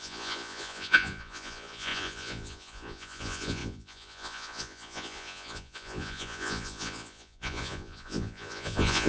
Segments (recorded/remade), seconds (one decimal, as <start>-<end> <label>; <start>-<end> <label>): 0.0-9.1 remade